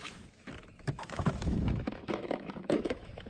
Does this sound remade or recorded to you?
remade